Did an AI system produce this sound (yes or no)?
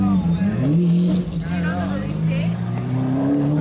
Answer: no